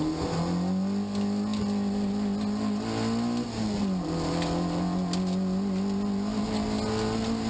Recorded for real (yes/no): yes